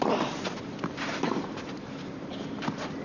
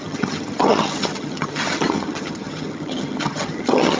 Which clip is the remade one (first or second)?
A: second